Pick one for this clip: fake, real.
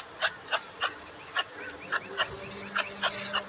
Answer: real